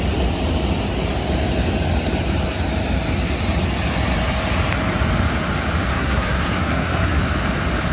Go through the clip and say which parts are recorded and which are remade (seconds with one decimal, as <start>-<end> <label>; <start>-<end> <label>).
0.0-5.9 recorded; 5.9-7.2 remade; 7.2-7.9 recorded